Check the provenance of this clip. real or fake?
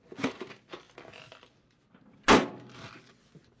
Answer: real